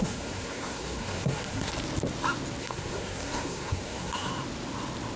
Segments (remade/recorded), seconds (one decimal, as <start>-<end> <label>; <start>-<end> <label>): 0.0-1.7 remade; 1.7-2.6 recorded; 2.6-4.3 remade; 4.3-5.2 recorded